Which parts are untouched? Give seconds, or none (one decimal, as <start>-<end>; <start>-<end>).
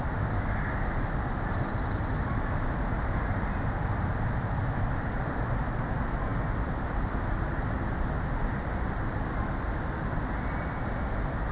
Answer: 0.0-11.5